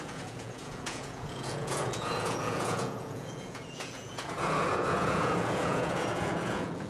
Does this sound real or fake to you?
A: fake